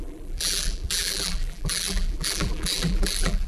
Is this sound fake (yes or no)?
yes